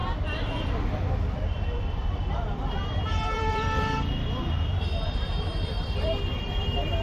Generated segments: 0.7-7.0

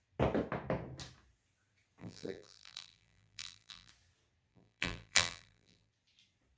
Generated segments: 2.0-3.9; 4.5-5.9

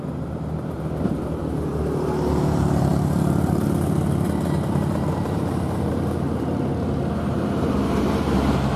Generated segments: 0.0-6.7; 7.2-8.8

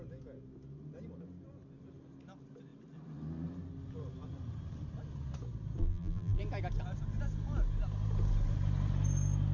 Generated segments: 5.8-6.4

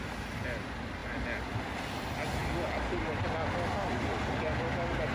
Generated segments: 2.4-3.0

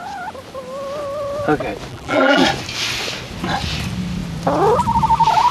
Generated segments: 1.9-2.4

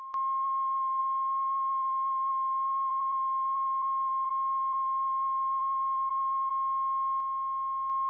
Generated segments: 0.0-6.5

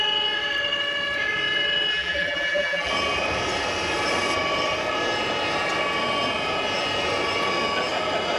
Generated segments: 1.9-2.9